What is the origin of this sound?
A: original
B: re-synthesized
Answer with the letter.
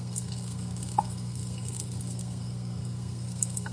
B